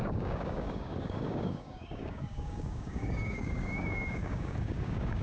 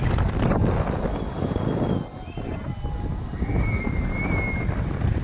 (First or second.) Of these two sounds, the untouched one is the second